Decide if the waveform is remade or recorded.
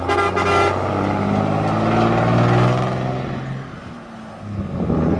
recorded